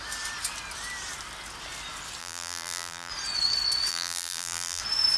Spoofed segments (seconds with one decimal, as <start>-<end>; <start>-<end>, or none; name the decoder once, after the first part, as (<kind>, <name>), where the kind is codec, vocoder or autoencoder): 2.2-3.1 (vocoder, BigVGAN v2); 3.9-4.8